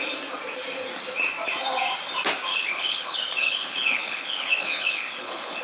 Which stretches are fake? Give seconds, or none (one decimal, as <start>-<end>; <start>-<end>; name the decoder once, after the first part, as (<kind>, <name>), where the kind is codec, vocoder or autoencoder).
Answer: 2.5-5.6 (codec, HILCodec)